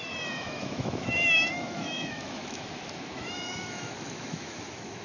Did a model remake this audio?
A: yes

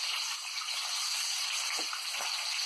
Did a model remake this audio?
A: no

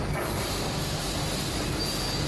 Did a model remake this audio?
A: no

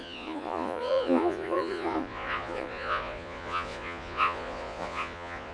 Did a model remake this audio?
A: yes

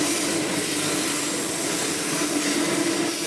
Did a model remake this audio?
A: no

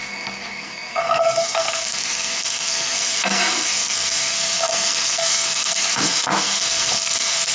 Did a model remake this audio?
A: yes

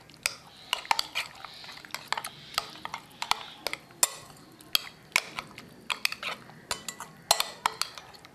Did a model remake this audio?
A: no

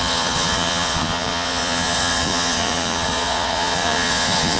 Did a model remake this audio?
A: yes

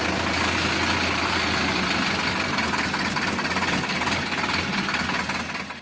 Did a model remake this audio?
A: no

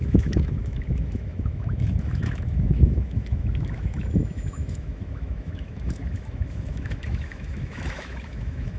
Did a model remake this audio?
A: yes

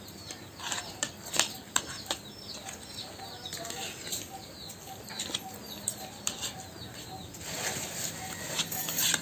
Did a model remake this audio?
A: no